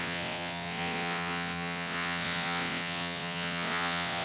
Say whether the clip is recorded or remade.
remade